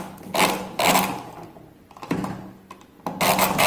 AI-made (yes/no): no